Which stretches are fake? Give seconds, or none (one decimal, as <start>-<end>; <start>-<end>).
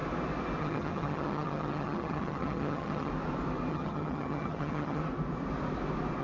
0.6-3.1; 3.7-5.0